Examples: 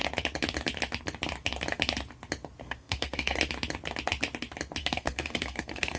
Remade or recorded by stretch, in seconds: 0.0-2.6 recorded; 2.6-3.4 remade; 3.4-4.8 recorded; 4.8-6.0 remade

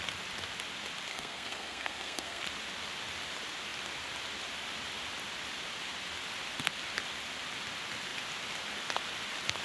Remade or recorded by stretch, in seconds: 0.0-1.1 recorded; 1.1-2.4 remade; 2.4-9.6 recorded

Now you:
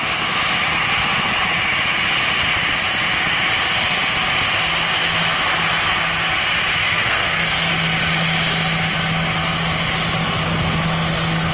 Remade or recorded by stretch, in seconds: 0.0-6.8 recorded; 6.8-7.7 remade; 7.7-11.5 recorded

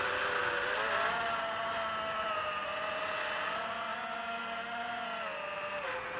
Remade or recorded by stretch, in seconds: 0.0-6.2 recorded